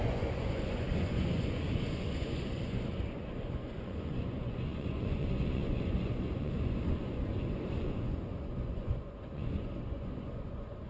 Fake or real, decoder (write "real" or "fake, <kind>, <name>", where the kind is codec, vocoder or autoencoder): fake, vocoder, Vocos